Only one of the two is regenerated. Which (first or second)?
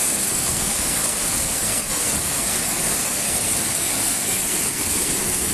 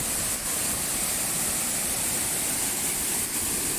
first